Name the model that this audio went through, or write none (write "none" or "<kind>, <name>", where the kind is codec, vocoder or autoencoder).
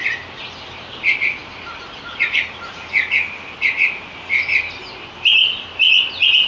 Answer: none